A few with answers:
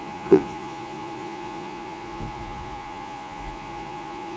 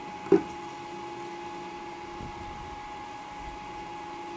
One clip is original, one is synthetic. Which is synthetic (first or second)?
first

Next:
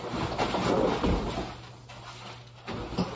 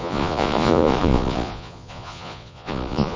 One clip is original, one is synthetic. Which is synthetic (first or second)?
second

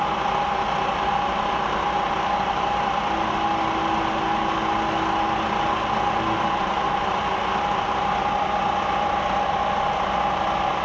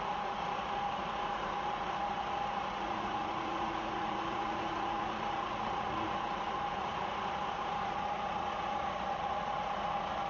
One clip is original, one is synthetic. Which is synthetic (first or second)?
second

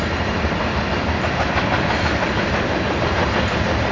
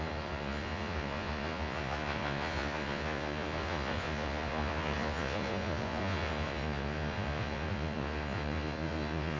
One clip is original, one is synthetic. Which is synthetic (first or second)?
second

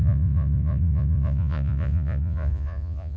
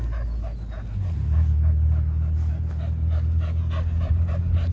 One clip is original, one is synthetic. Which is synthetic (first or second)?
first